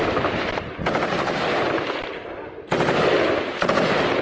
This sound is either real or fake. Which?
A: real